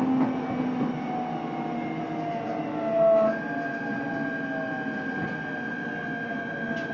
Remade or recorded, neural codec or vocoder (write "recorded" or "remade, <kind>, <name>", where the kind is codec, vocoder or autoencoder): recorded